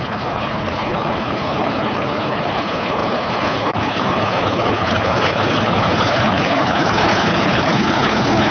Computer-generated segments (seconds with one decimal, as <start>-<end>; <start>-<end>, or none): 0.0-8.5